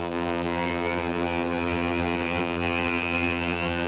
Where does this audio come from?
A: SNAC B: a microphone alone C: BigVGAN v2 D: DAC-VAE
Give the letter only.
C